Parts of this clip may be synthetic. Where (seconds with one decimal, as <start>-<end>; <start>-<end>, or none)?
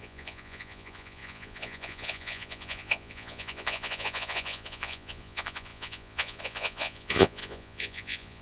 0.0-8.4